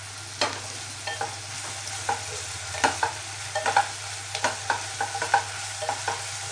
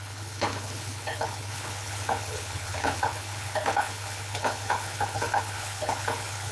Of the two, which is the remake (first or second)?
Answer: second